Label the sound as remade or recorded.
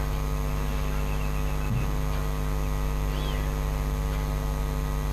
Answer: recorded